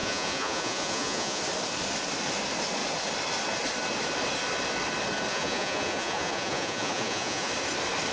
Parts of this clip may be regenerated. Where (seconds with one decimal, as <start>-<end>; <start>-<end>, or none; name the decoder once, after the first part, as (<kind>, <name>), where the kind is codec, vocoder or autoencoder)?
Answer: 0.0-1.4 (vocoder, Vocos); 5.3-7.5